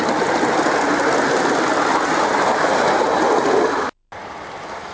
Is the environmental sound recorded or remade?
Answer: recorded